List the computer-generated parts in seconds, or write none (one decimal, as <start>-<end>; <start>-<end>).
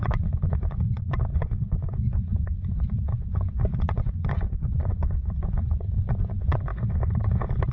0.0-6.7